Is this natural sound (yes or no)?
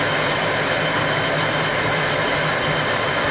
yes